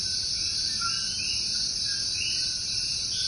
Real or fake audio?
real